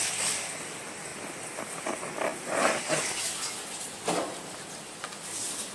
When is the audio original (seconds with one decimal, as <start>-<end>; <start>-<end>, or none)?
0.0-5.7